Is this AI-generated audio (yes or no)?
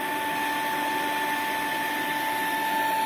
no